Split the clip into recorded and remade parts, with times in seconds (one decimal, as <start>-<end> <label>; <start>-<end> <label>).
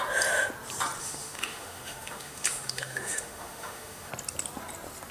0.0-1.0 recorded; 1.0-4.1 remade; 4.1-5.1 recorded